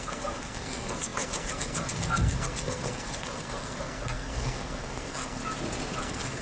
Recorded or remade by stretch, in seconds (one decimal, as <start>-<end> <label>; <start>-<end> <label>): 0.0-5.4 remade; 5.4-6.0 recorded; 6.0-6.4 remade